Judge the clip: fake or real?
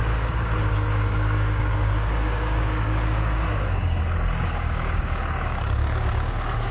fake